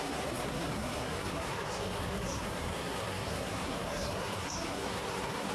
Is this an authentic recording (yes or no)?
no